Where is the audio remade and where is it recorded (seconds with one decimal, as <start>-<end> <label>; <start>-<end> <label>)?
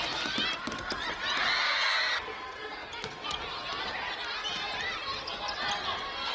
0.0-6.3 recorded